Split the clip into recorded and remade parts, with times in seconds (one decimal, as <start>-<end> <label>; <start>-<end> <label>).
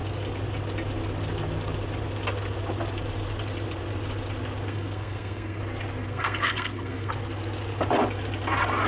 0.0-4.7 recorded; 4.7-5.6 remade; 5.6-6.0 recorded; 6.0-7.1 remade; 7.1-8.9 recorded